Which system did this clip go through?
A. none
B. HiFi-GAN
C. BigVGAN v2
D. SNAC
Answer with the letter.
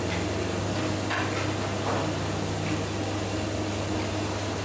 A